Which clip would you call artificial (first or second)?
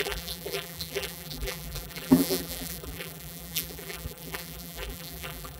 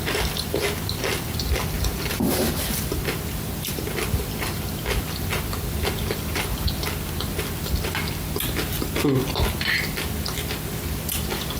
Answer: first